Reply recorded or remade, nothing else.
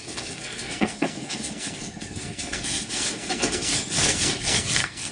remade